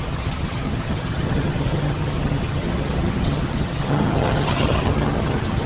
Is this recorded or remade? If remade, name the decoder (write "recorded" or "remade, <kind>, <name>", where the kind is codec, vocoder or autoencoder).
remade, vocoder, HiFi-GAN